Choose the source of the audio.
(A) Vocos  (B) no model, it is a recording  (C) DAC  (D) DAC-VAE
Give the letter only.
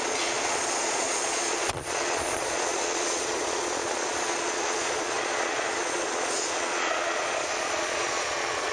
A